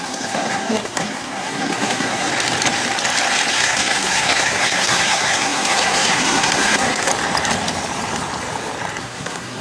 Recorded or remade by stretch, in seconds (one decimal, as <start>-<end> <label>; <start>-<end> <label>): 0.0-2.3 remade; 2.3-3.5 recorded; 3.5-7.1 remade; 7.1-9.0 recorded; 9.0-9.6 remade